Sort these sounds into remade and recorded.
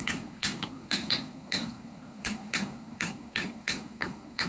remade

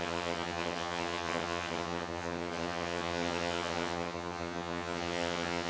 remade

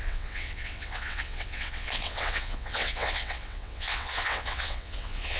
remade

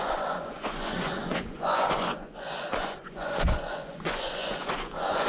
remade